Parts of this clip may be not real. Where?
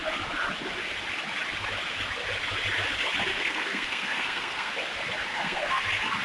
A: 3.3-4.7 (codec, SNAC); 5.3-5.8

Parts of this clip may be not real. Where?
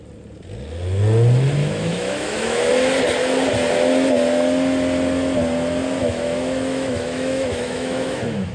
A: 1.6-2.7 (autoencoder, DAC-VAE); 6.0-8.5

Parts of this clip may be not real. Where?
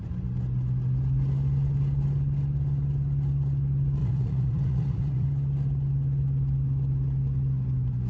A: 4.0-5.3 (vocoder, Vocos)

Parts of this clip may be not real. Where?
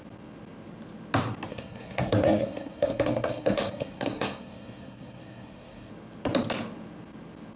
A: 1.5-5.9 (codec, SNAC)